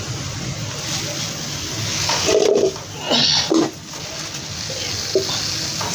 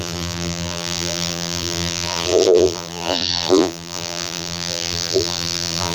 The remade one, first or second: second